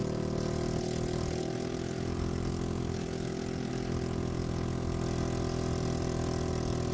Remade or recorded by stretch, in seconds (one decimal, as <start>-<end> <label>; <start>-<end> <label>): 0.0-6.9 recorded